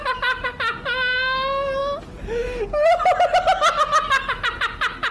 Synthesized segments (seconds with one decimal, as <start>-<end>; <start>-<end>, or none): none